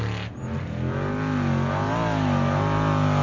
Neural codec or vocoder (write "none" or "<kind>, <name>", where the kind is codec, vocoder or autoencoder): none